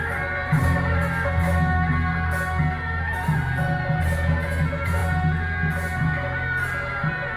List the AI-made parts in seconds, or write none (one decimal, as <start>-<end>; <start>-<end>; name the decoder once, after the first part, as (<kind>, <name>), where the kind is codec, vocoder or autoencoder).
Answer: none